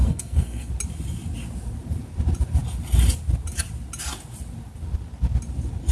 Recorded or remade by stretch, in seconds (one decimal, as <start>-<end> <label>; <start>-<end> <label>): 0.0-0.7 remade; 0.7-5.9 recorded